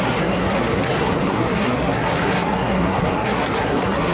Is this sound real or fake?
fake